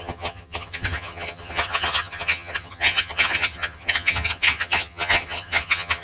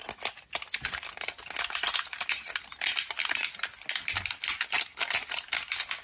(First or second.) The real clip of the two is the second